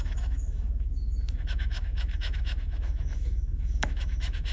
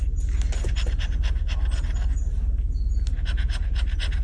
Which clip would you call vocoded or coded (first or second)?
first